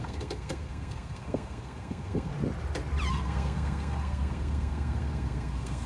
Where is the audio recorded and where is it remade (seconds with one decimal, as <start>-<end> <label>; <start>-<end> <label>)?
0.0-2.3 remade; 2.3-3.1 recorded; 3.1-5.9 remade